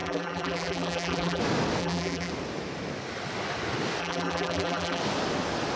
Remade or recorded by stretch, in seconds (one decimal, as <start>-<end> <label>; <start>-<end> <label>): 0.0-1.4 remade; 1.4-1.8 recorded; 1.8-2.3 remade; 2.3-4.0 recorded; 4.0-5.0 remade; 5.0-5.8 recorded